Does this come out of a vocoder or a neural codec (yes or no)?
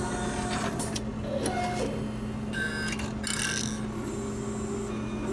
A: no